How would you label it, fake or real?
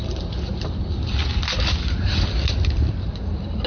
real